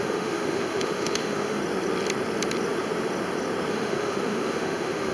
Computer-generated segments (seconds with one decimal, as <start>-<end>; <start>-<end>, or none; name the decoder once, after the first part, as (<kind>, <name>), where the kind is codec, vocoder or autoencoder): 0.0-1.6 (autoencoder, DAC-VAE); 3.7-5.1